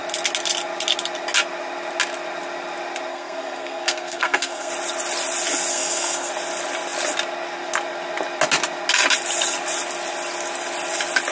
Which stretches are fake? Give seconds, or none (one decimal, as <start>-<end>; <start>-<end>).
3.1-4.7; 5.7-6.3